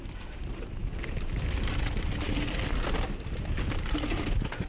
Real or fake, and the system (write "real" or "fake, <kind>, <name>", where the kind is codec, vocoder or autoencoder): real